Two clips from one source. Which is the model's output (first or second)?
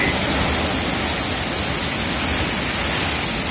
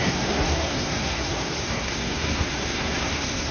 second